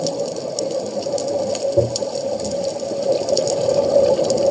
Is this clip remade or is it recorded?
recorded